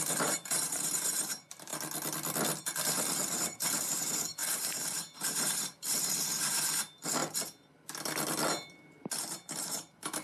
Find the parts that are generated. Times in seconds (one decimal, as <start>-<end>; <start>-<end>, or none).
0.0-1.7; 2.6-7.2; 9.6-10.2